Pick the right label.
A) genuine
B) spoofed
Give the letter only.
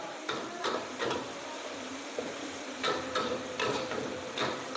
B